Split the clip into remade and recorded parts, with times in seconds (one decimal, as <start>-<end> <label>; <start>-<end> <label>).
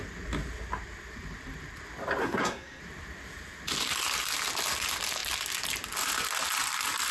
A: 0.0-2.2 recorded; 2.2-2.8 remade; 2.8-7.1 recorded